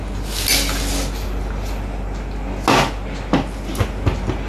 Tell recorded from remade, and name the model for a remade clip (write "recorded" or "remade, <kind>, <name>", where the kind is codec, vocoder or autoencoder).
recorded